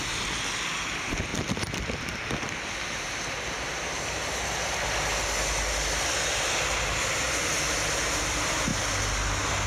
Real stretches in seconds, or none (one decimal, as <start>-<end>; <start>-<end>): 0.0-9.7